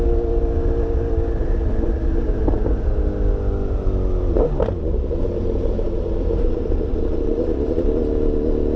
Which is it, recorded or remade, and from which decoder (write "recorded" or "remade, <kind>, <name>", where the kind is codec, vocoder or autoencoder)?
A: recorded